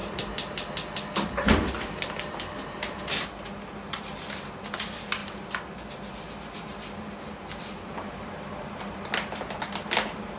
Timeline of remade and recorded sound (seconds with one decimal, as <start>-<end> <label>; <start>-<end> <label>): 0.0-10.4 recorded